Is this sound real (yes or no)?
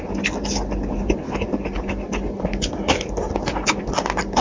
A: yes